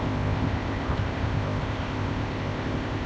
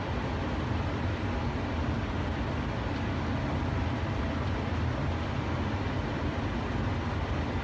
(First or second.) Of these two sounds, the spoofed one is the first